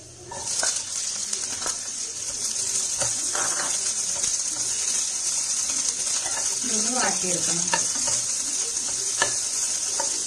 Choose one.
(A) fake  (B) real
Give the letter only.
A